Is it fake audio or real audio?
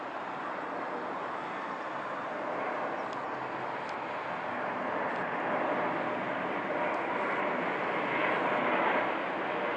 real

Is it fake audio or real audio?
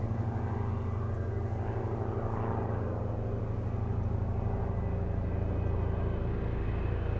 real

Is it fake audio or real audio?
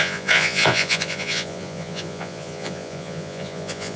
fake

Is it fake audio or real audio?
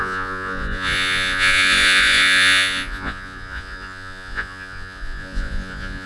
fake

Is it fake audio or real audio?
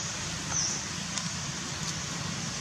real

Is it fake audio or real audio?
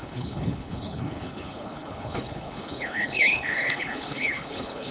fake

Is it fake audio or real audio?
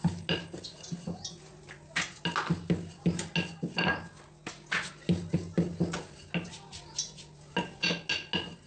real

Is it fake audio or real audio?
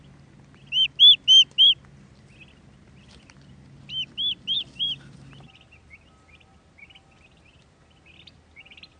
real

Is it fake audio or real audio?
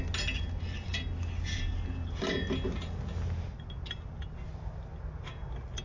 real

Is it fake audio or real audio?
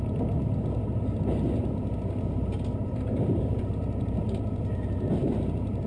real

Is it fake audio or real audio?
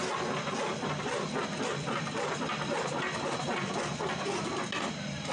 real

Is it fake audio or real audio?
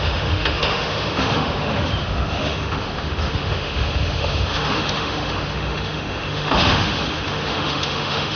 fake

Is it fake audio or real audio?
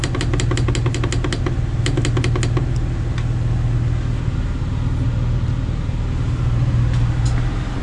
real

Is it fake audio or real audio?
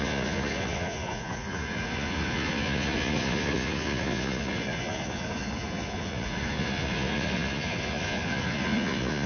fake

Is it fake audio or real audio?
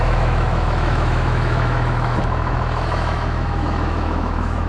fake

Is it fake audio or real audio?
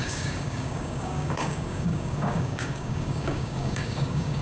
fake